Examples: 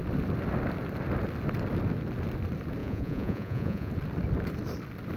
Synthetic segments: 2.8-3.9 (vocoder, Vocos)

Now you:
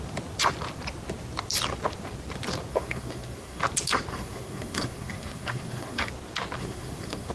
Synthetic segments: 2.7-3.6 (codec, SNAC); 4.1-6.1; 6.6-7.3

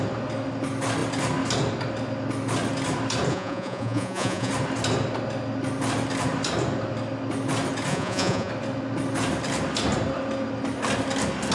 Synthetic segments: 3.3-4.5 (vocoder, Vocos); 7.9-8.5

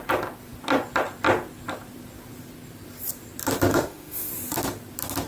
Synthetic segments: 3.7-4.3 (autoencoder, DAC-VAE)

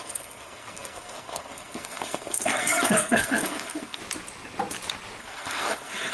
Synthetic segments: 0.0-4.0 (codec, SNAC); 5.2-6.1

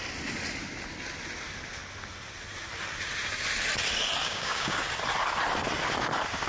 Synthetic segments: 4.2-4.8 (codec, DAC)

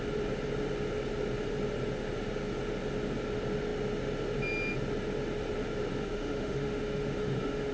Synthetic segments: 6.0-7.7 (autoencoder, DAC-VAE)

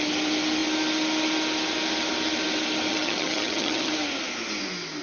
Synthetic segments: 2.9-3.9 (vocoder, HiFi-GAN)